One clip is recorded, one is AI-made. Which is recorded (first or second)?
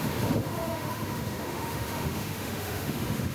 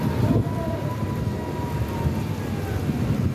second